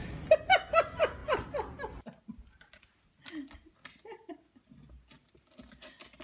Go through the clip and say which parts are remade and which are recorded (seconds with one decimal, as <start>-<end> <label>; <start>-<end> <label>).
0.0-6.2 recorded